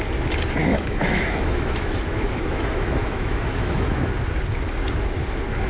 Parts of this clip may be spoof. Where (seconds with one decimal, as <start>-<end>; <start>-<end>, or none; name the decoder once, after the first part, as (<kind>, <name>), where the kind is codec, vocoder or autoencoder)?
0.7-4.1 (autoencoder, DAC-VAE)